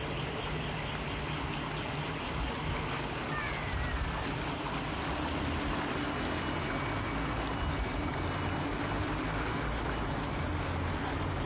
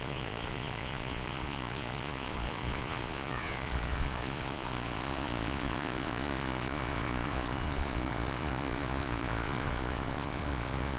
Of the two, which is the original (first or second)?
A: first